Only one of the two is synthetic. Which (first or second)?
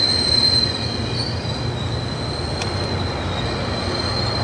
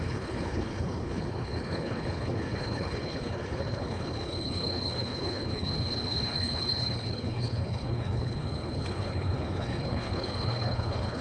second